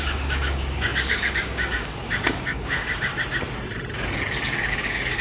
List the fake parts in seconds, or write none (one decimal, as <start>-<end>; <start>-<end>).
0.0-3.1; 4.7-5.2